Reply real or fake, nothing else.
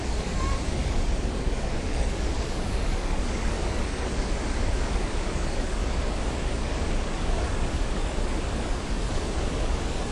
fake